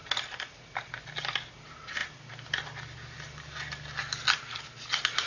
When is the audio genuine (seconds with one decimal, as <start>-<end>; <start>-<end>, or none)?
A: 0.0-5.3